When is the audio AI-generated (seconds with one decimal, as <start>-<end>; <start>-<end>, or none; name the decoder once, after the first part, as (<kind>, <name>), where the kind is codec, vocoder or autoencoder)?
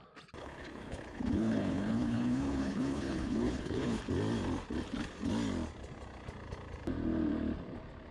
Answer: 0.4-4.0 (codec, HILCodec)